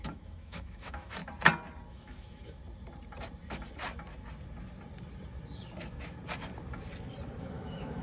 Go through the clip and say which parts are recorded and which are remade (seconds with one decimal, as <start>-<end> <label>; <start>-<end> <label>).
0.0-1.2 remade; 1.2-1.9 recorded; 1.9-2.6 remade; 2.6-7.4 recorded; 7.4-8.0 remade